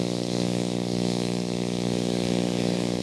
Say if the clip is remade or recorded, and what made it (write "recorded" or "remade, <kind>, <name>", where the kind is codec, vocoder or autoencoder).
remade, codec, DAC